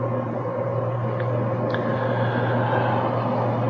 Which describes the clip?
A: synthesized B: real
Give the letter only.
B